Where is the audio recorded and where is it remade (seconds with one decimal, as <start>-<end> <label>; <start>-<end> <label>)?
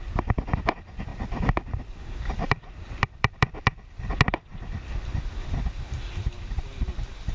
0.0-1.1 recorded; 1.1-3.5 remade; 3.5-4.5 recorded; 4.5-5.1 remade; 5.1-7.3 recorded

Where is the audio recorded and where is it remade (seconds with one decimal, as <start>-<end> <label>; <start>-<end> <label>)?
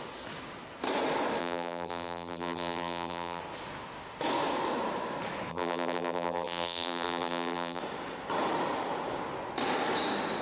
0.0-1.4 recorded; 1.4-3.4 remade; 3.4-5.5 recorded; 5.5-7.8 remade; 7.8-10.4 recorded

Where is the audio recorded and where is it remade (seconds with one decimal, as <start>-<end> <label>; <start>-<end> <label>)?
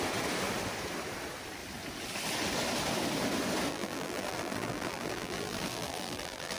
0.0-3.7 recorded; 3.7-6.6 remade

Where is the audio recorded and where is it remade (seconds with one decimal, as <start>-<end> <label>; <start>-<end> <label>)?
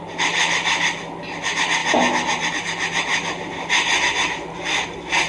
0.0-1.8 remade; 1.8-2.5 recorded; 2.5-3.1 remade; 3.1-5.3 recorded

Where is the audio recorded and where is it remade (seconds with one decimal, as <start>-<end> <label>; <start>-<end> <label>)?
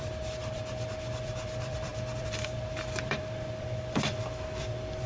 0.0-5.1 remade